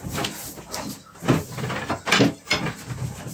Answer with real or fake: real